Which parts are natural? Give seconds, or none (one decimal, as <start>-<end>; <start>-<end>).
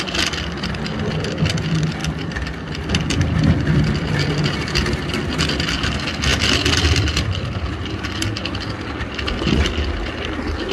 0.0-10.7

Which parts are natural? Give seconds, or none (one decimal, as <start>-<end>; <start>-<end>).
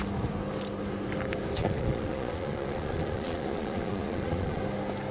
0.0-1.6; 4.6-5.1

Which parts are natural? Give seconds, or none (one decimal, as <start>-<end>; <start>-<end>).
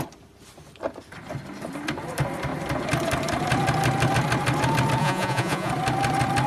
0.0-5.0; 5.7-6.5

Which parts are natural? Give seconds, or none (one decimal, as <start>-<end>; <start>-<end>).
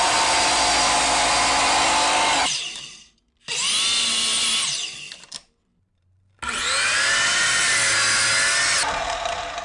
0.0-9.6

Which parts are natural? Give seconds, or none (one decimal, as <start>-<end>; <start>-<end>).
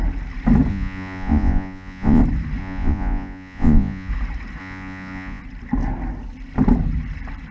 0.0-0.7; 2.2-2.6; 4.1-4.6; 5.4-7.5